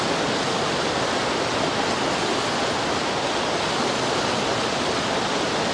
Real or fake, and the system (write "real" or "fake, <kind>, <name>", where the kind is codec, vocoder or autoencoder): real